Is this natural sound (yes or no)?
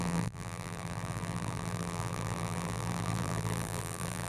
no